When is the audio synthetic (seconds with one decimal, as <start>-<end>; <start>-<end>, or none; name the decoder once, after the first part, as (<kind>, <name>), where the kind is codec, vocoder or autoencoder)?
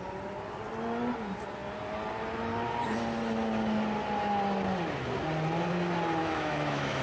6.2-7.0 (autoencoder, DAC-VAE)